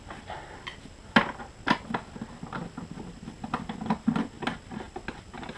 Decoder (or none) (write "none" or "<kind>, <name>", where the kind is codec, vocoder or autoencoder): none